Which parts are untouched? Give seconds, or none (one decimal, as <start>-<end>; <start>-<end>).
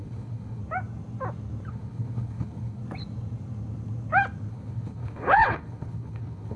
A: 0.6-1.7; 2.8-4.5